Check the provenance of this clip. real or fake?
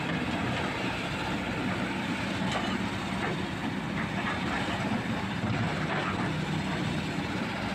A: fake